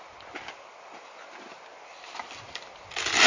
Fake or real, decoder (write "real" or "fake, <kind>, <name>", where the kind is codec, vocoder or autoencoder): real